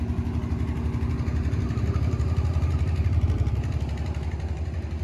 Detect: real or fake real